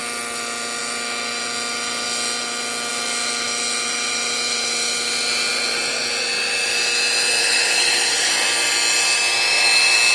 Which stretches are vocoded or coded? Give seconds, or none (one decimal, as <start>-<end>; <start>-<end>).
7.4-8.3